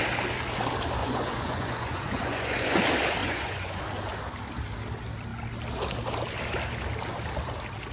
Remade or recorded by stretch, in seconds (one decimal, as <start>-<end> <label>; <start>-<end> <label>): 0.0-1.0 recorded; 1.0-2.8 remade; 2.8-3.2 recorded; 3.2-3.8 remade; 3.8-7.9 recorded